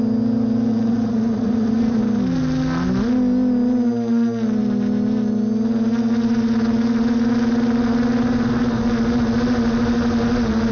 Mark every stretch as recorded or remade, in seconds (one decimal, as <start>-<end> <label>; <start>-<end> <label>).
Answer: 0.0-0.7 recorded; 0.7-2.0 remade; 2.0-10.7 recorded